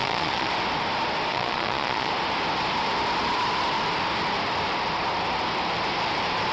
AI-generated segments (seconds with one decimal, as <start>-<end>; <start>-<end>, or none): 0.0-0.5; 1.3-2.1